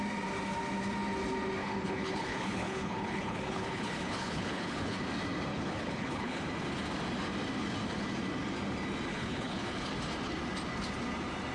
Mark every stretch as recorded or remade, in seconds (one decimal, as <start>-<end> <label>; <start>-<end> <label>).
0.0-1.6 recorded; 1.6-5.0 remade; 5.0-5.5 recorded; 5.5-6.4 remade; 6.4-9.1 recorded; 9.1-9.9 remade; 9.9-11.5 recorded